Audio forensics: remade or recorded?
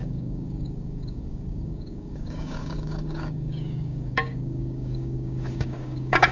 remade